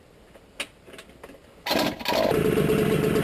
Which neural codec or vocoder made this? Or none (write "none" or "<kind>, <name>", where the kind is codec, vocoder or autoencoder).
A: none